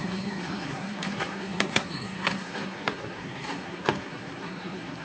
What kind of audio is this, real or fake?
fake